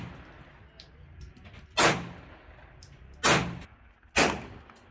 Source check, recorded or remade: recorded